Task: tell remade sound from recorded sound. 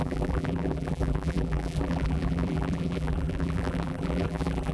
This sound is remade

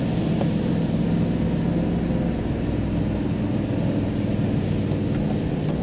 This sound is recorded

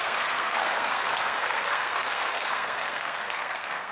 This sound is remade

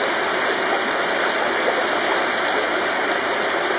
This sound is recorded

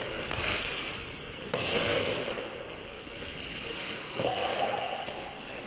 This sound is remade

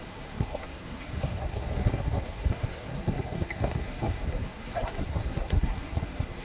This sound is remade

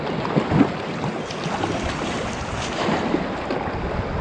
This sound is recorded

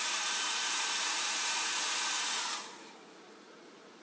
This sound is remade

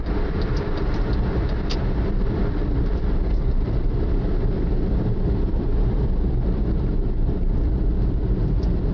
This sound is remade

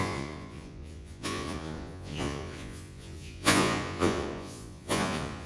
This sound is remade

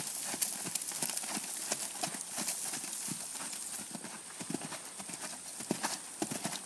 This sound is recorded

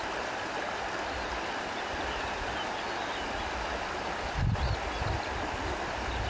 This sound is recorded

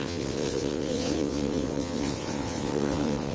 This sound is remade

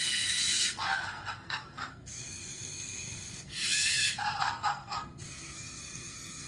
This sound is remade